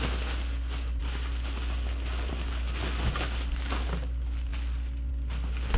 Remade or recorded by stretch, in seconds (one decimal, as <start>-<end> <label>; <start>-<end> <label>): 0.0-5.8 recorded